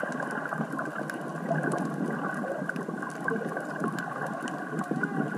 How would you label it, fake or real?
real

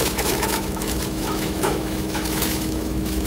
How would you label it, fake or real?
fake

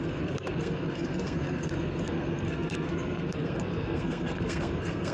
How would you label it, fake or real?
fake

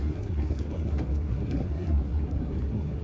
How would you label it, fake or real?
fake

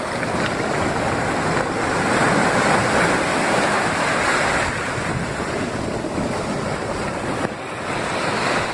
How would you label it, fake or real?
real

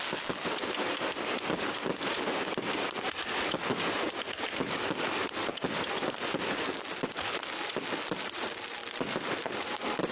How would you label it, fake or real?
real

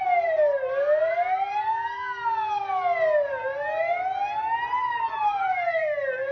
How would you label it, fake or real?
real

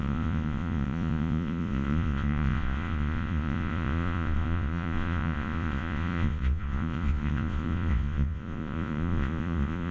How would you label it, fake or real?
fake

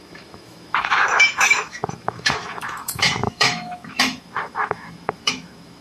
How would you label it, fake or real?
fake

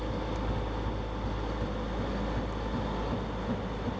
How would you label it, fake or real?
real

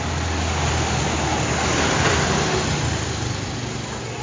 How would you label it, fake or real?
real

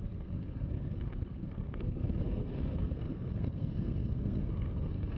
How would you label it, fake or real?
fake